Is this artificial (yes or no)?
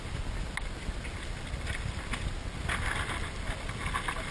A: no